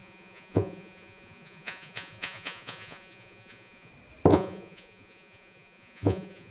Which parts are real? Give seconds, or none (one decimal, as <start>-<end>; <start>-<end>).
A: 3.9-4.3